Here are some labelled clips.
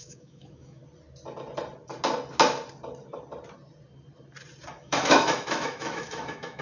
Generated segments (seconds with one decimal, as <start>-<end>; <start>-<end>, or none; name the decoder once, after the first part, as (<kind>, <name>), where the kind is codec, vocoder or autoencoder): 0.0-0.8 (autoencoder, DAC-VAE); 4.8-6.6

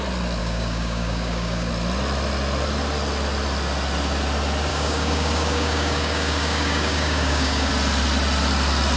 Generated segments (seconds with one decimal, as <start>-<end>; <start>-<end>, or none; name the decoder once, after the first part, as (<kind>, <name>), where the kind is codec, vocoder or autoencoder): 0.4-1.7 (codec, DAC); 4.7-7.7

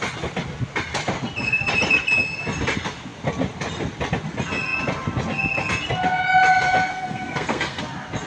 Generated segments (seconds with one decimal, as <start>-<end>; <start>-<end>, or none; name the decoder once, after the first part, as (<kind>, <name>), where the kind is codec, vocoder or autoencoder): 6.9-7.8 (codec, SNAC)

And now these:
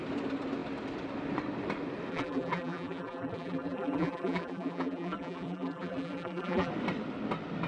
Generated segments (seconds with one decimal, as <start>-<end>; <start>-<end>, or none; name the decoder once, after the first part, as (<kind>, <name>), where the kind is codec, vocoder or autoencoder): 2.1-6.7 (vocoder, BigVGAN v2)

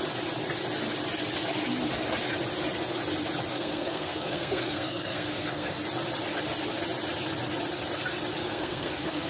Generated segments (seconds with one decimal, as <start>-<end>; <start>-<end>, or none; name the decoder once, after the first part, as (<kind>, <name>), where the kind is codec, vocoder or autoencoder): 3.5-5.8 (codec, SNAC); 8.4-9.3

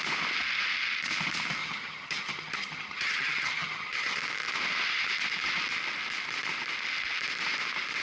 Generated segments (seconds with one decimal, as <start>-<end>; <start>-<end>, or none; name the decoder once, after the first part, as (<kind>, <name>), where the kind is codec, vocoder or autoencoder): 1.6-4.2 (vocoder, HiFi-GAN)

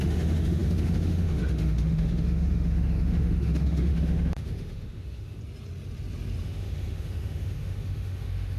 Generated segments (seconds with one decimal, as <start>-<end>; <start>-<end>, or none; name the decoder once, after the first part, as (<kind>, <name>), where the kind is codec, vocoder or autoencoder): 0.0-5.4 (autoencoder, DAC-VAE); 6.4-8.6

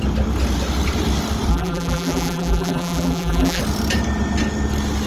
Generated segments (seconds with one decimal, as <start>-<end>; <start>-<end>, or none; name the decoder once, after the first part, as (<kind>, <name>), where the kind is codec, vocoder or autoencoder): 1.5-3.6 (vocoder, BigVGAN v2)